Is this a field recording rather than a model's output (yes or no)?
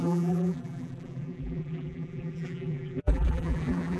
no